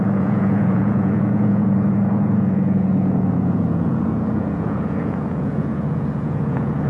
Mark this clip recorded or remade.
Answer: remade